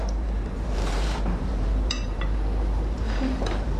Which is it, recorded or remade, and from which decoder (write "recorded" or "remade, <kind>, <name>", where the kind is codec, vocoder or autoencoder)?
remade, vocoder, BigVGAN v2